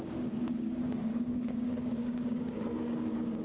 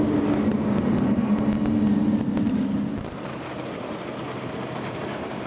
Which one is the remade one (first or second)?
first